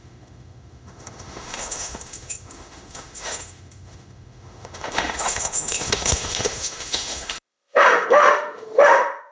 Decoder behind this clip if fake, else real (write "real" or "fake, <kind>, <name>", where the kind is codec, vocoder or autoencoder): fake, autoencoder, DAC-VAE